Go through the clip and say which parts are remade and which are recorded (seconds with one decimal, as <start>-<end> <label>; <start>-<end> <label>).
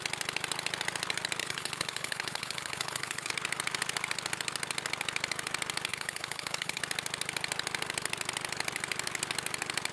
0.0-1.4 recorded; 1.4-3.3 remade; 3.3-5.9 recorded; 5.9-6.8 remade; 6.8-9.9 recorded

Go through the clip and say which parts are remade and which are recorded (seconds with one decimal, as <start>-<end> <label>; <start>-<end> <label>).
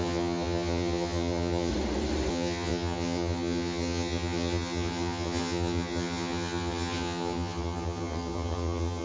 0.0-1.7 remade; 1.7-2.3 recorded; 2.3-9.0 remade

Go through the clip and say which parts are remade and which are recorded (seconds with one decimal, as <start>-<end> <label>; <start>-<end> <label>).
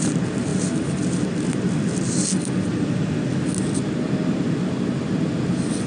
0.0-5.9 recorded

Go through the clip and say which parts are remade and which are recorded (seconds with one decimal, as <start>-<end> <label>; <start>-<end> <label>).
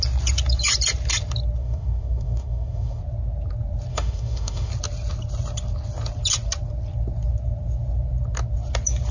0.0-1.6 recorded; 1.6-3.0 remade; 3.0-3.9 recorded; 3.9-4.7 remade; 4.7-9.1 recorded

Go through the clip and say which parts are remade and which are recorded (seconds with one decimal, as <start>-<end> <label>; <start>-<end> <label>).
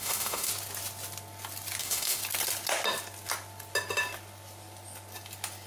0.0-0.5 remade; 0.5-1.8 recorded; 1.8-2.2 remade; 2.2-5.7 recorded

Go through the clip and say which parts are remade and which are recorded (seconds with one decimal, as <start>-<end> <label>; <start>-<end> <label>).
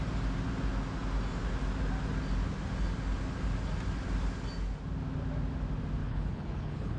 0.0-6.0 recorded; 6.0-7.0 remade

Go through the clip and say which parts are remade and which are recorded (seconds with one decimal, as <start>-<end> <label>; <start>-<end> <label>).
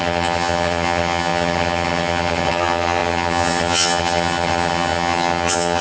0.0-5.8 remade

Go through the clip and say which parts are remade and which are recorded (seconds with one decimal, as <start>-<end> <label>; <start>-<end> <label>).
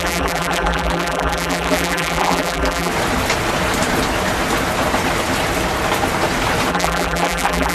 0.0-2.9 remade; 2.9-6.7 recorded; 6.7-7.7 remade